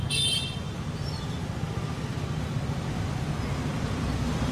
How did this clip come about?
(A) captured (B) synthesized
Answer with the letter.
A